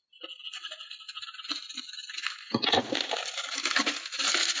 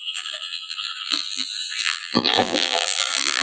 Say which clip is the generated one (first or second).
second